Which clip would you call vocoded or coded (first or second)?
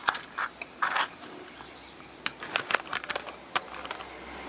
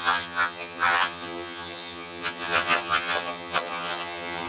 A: second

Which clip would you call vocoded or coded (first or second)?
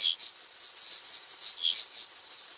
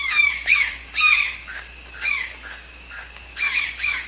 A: second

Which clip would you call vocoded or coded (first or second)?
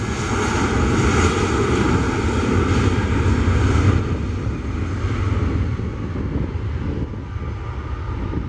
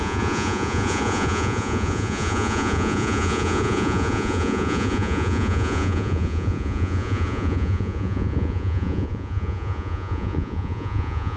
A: second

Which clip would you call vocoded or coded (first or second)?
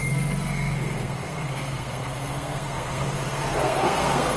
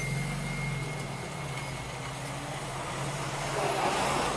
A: first